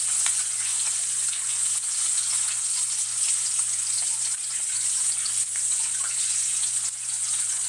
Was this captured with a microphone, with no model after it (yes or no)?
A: no